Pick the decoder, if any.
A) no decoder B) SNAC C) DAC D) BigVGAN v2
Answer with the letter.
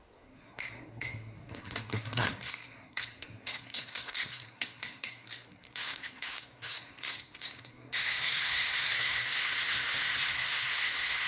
B